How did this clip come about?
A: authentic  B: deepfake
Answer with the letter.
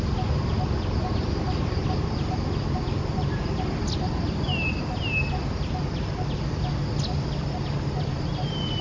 A